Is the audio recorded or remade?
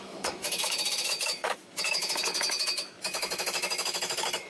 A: remade